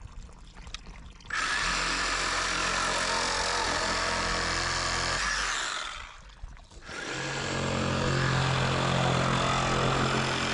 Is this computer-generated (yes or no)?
no